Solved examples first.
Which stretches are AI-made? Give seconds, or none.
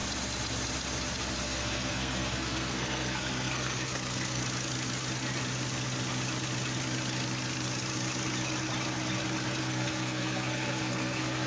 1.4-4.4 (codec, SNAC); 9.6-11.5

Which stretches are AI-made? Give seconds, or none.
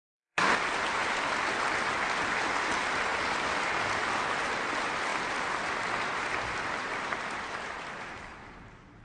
0.0-0.5 (codec, SNAC)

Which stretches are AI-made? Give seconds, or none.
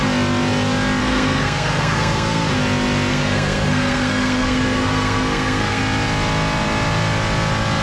1.0-2.5 (codec, SNAC); 3.1-5.8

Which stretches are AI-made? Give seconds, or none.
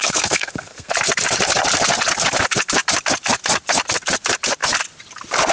0.0-0.9 (codec, SNAC)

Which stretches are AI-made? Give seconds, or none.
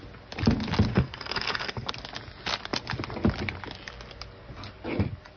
0.9-1.9 (codec, SNAC)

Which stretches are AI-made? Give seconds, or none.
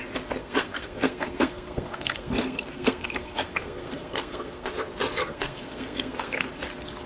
0.4-4.7 (codec, SNAC); 5.2-6.6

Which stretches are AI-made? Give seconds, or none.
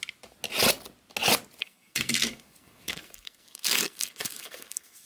1.6-5.1 (codec, SNAC)